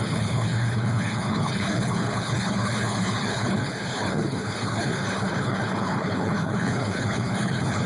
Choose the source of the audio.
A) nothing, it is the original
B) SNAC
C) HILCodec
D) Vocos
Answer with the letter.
C